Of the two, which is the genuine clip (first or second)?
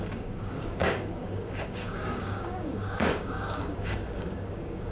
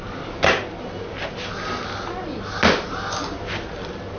second